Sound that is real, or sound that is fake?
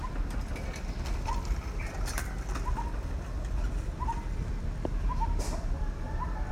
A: real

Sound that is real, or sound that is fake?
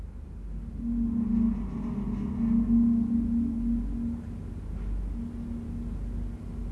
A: real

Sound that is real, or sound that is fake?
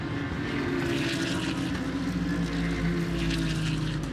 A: real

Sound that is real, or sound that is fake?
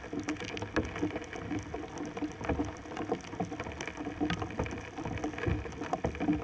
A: real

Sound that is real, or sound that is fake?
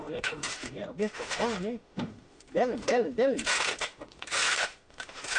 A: fake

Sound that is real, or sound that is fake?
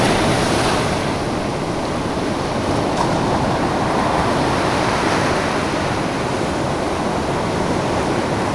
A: real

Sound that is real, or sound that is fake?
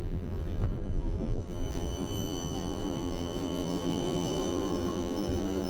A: fake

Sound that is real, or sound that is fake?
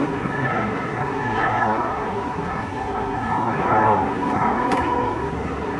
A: fake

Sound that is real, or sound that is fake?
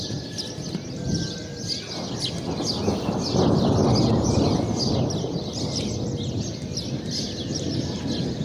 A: real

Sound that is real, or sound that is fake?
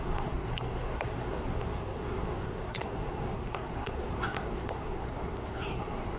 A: fake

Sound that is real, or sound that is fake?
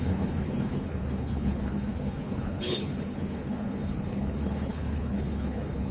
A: fake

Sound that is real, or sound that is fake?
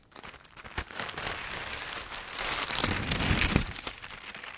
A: real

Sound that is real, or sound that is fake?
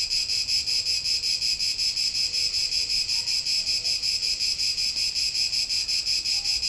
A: real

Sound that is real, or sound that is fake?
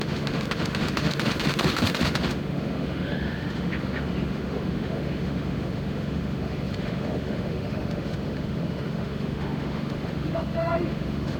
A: fake